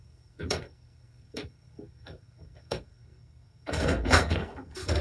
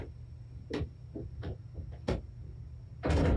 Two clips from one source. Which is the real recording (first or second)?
second